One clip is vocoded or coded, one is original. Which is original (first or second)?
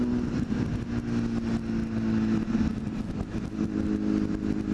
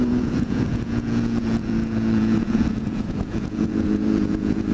first